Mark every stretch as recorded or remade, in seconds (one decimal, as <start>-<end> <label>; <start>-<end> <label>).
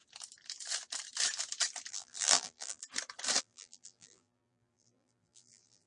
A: 0.0-1.9 recorded; 1.9-2.8 remade; 2.8-3.4 recorded; 3.4-5.9 remade